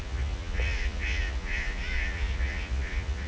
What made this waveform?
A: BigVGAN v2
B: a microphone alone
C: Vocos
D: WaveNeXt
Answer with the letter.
C